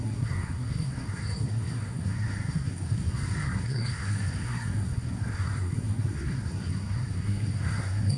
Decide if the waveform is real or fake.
fake